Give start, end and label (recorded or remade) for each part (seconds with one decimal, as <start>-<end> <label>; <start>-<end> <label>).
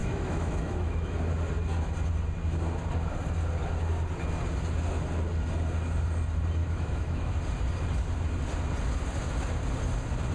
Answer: 0.0-1.2 remade; 1.2-6.6 recorded; 6.6-7.3 remade; 7.3-10.3 recorded